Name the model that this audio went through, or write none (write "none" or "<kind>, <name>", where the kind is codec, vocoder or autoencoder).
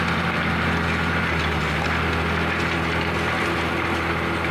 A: none